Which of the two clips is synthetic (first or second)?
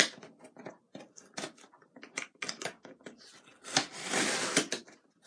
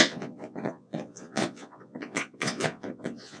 second